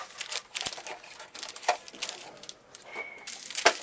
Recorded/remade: recorded